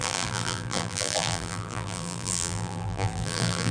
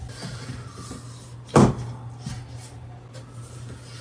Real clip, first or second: second